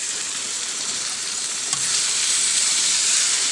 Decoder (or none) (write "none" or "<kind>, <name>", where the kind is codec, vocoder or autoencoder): vocoder, BigVGAN v2